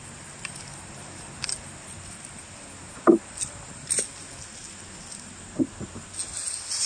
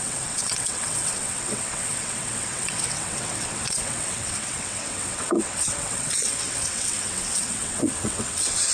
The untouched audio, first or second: first